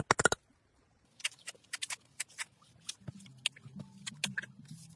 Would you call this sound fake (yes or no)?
no